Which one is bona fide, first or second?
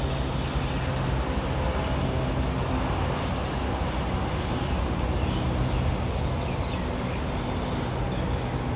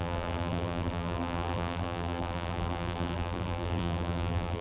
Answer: first